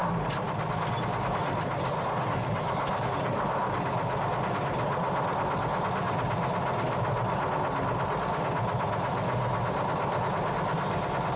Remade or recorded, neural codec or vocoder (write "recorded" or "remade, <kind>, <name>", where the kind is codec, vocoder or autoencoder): recorded